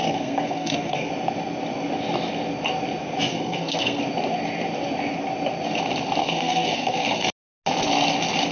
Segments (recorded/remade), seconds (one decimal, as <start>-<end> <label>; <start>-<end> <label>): 0.0-1.1 remade; 1.1-3.3 recorded; 3.3-4.0 remade; 4.0-6.2 recorded; 6.2-7.3 remade; 7.3-8.5 recorded